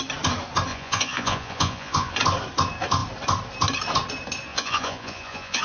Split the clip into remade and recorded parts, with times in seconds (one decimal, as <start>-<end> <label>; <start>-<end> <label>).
0.0-0.7 recorded; 0.7-2.2 remade; 2.2-4.5 recorded; 4.5-5.6 remade